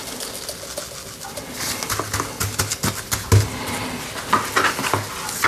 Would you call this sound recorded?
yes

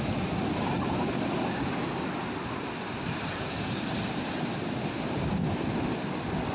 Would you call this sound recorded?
yes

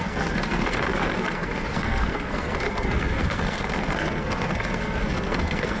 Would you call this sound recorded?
no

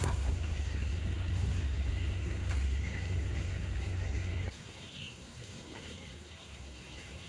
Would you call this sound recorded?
no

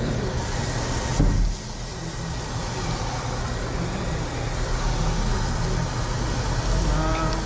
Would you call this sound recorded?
yes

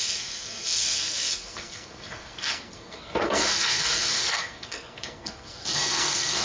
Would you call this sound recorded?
no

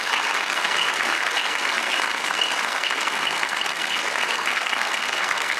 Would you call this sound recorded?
no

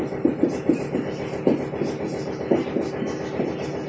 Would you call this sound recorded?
yes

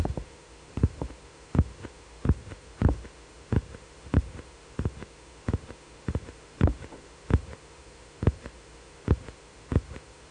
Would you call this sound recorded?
no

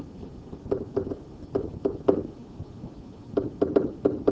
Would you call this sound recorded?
yes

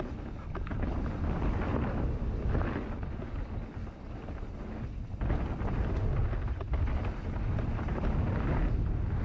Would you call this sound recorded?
yes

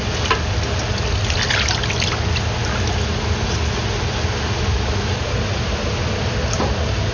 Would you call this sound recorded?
yes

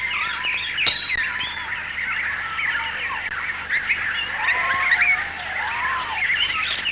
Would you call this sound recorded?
yes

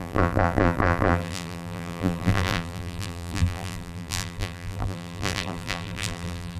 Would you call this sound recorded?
no